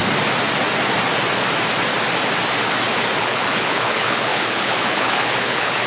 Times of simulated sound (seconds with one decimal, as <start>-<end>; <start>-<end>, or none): 3.2-5.9